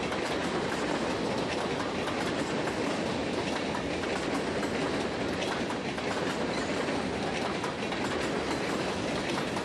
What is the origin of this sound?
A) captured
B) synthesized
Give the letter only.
A